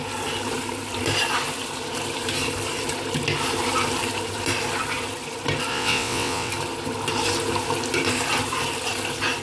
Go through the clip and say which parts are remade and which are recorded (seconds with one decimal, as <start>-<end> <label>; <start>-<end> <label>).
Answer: 0.0-5.7 recorded; 5.7-6.5 remade; 6.5-9.4 recorded